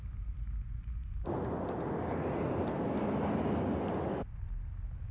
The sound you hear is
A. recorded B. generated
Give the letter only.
A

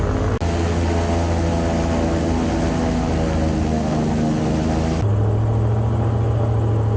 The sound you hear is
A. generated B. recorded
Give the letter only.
B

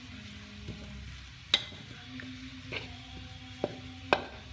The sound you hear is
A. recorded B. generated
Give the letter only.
A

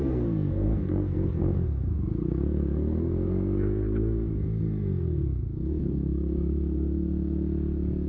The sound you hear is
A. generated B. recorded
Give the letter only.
A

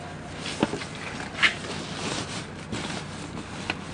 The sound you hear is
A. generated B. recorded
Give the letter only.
B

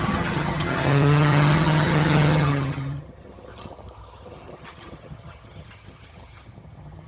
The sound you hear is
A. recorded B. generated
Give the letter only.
B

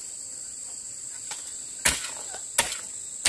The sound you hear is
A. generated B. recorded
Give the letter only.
B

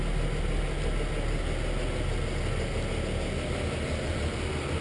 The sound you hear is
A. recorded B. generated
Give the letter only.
A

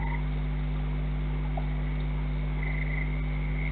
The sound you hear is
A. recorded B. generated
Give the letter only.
A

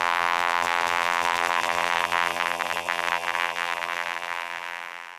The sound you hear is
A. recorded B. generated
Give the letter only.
B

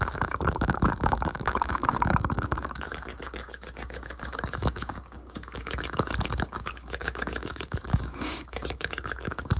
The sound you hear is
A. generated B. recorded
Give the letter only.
A